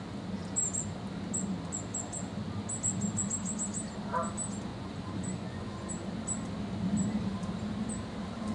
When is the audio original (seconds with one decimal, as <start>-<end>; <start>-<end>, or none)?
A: 0.0-4.7; 5.9-8.5